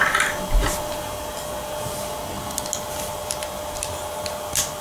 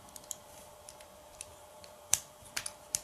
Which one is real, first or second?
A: first